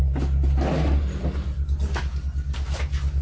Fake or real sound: real